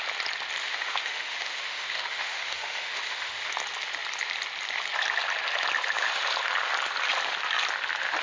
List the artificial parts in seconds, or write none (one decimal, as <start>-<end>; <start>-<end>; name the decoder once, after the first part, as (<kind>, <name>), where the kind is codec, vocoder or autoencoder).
0.6-3.5 (autoencoder, DAC-VAE)